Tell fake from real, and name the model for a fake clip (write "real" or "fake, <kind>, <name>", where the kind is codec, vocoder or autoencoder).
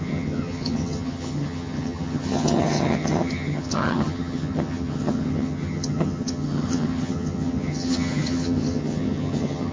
fake, vocoder, HiFi-GAN